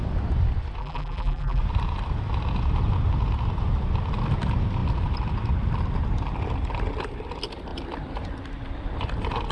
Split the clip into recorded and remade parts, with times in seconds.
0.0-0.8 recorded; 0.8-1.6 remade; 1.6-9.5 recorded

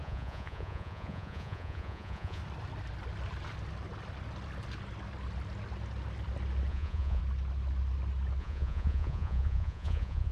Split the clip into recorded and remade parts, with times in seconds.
0.0-2.4 remade; 2.4-6.7 recorded; 6.7-7.2 remade; 7.2-8.4 recorded; 8.4-10.3 remade

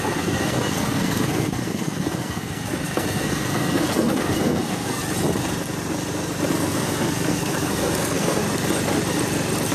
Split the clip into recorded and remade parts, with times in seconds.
0.0-5.0 remade; 5.0-6.5 recorded; 6.5-8.4 remade; 8.4-9.7 recorded